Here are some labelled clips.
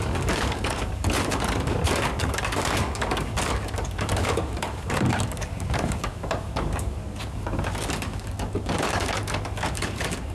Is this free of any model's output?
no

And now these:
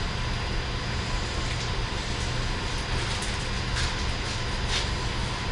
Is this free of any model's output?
yes